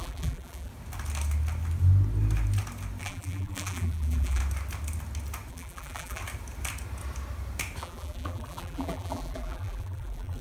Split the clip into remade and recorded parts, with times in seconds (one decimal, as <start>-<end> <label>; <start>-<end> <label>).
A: 0.0-0.7 remade; 0.7-3.0 recorded; 3.0-4.4 remade; 4.4-5.5 recorded; 5.5-6.2 remade; 6.2-7.8 recorded; 7.8-10.4 remade